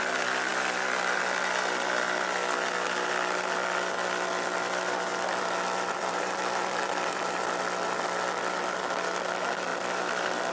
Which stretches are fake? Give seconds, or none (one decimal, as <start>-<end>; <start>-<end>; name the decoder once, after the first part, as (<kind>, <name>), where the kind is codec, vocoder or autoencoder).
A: 0.5-1.2 (vocoder, BigVGAN v2); 5.1-7.6; 9.7-10.5